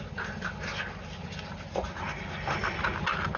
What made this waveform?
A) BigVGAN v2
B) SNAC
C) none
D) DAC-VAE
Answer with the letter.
C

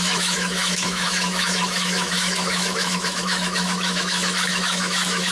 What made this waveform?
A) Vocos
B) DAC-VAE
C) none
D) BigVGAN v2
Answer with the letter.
B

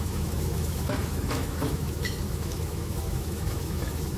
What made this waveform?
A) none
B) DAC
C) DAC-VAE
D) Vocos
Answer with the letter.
C